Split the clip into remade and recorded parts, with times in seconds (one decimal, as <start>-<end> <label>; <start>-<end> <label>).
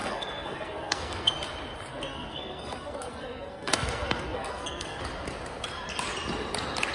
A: 0.0-1.3 remade; 1.3-1.9 recorded; 1.9-5.0 remade; 5.0-6.9 recorded